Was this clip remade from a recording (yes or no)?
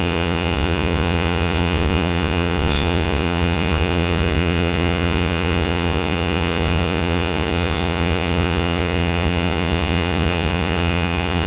yes